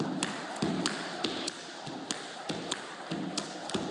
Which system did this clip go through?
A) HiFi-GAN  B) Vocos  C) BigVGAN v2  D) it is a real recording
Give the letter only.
D